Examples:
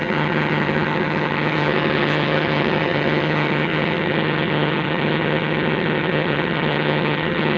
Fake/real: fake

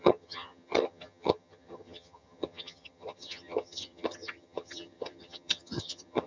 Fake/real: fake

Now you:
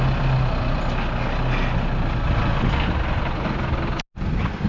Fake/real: real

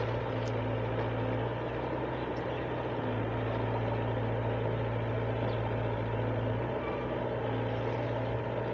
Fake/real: real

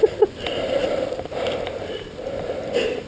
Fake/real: real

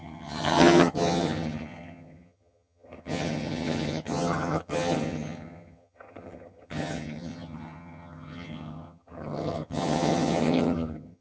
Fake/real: fake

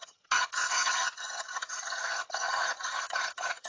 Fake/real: fake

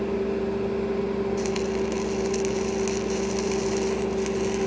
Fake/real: real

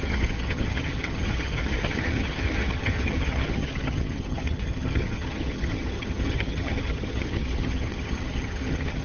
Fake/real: fake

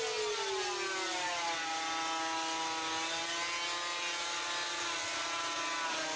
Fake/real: real